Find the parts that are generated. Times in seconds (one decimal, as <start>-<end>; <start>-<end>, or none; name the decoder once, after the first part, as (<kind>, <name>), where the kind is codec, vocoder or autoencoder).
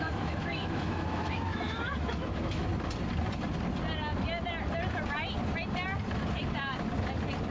0.0-2.7 (autoencoder, DAC-VAE)